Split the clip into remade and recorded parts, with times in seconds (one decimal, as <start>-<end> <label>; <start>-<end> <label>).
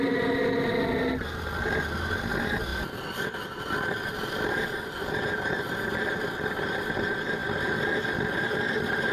0.0-9.1 recorded